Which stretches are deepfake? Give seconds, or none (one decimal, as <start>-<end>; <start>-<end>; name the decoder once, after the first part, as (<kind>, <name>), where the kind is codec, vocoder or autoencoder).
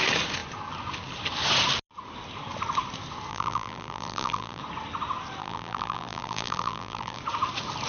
3.3-4.6 (vocoder, BigVGAN v2); 5.4-7.2